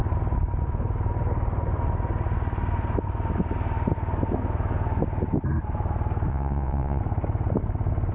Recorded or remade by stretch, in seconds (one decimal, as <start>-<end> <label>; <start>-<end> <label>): 0.0-6.3 recorded; 6.3-7.0 remade; 7.0-8.1 recorded